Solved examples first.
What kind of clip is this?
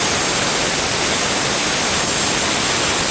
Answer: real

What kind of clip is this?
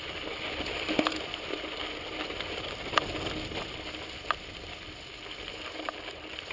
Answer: real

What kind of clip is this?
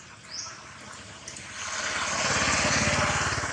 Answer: real